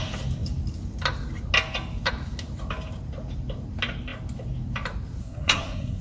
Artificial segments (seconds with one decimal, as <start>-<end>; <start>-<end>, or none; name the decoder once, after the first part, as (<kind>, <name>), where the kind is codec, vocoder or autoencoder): 5.2-6.0 (codec, SNAC)